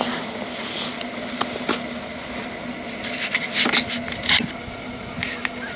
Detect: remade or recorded recorded